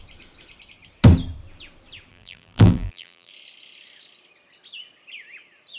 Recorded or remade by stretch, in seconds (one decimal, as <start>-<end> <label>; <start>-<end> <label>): 0.0-2.1 recorded; 2.1-3.3 remade; 3.3-5.8 recorded

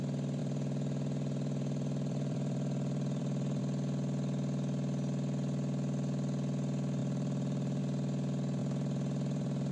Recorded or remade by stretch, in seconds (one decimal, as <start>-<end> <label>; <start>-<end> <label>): 0.0-0.4 recorded; 0.4-3.6 remade; 3.6-7.0 recorded; 7.0-7.8 remade; 7.8-8.6 recorded; 8.6-9.7 remade

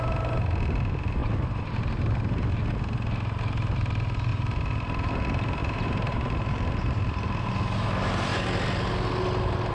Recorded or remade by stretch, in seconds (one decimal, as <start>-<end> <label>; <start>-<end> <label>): 0.0-1.2 recorded; 1.2-1.8 remade; 1.8-4.3 recorded; 4.3-5.1 remade; 5.1-5.6 recorded; 5.6-7.5 remade; 7.5-9.7 recorded

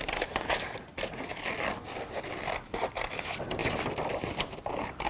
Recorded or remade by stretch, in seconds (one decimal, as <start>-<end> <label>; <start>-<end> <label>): 0.0-1.3 remade; 1.3-2.3 recorded; 2.3-3.6 remade; 3.6-4.4 recorded; 4.4-5.1 remade

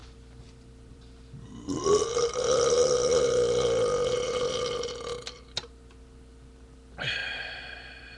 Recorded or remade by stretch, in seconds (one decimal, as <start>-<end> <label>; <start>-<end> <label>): 0.0-2.9 remade; 2.9-7.2 recorded; 7.2-8.2 remade

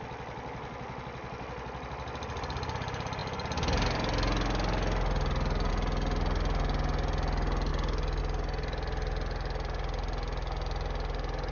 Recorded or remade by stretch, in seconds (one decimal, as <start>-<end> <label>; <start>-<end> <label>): 0.0-11.5 recorded

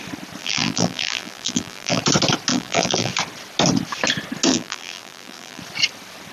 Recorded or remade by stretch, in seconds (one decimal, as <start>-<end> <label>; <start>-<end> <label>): 0.0-0.4 recorded; 0.4-2.0 remade; 2.0-2.5 recorded; 2.5-3.1 remade; 3.1-4.5 recorded; 4.5-5.6 remade; 5.6-6.3 recorded

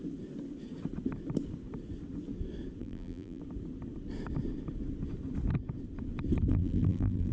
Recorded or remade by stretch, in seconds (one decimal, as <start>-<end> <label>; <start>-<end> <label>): 0.0-2.8 recorded; 2.8-3.4 remade; 3.4-6.5 recorded; 6.5-7.3 remade